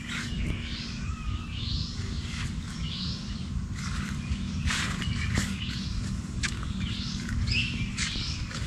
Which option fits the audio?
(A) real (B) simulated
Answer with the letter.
B